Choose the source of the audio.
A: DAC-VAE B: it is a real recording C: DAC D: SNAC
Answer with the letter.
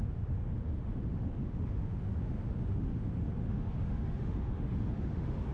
A